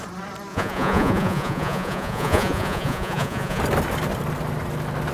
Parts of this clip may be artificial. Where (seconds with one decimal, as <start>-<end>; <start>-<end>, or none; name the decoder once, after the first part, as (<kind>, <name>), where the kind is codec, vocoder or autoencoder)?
0.5-3.6 (vocoder, Vocos)